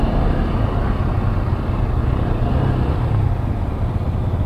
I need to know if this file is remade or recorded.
recorded